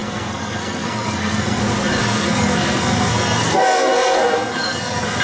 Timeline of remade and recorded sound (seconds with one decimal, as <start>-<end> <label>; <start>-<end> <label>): 0.0-1.6 remade; 1.6-2.0 recorded; 2.0-5.2 remade